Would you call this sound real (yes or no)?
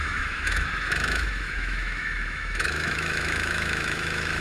no